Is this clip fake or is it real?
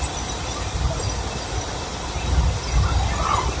real